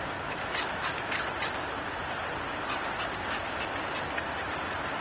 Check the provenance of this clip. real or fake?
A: real